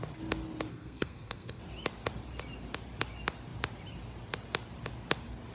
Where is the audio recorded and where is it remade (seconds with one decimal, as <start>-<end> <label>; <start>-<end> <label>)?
0.0-0.7 recorded; 0.7-1.6 remade; 1.6-5.5 recorded